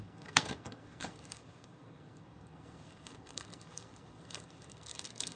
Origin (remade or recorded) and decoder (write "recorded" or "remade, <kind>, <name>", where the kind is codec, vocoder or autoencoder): remade, codec, SNAC